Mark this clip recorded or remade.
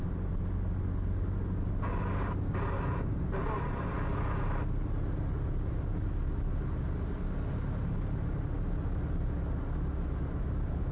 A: recorded